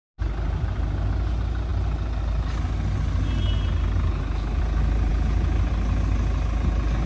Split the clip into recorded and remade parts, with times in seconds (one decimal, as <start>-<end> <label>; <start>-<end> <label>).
0.0-7.1 recorded